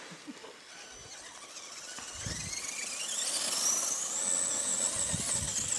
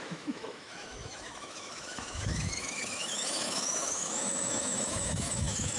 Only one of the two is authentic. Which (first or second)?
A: first